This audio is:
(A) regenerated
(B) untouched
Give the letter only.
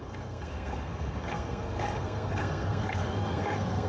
A